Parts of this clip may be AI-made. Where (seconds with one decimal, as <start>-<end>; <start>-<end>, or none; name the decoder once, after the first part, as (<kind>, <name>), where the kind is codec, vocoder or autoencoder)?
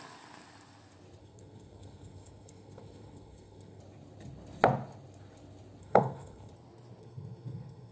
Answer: 1.2-3.8 (codec, SNAC); 5.8-6.5; 7.0-7.9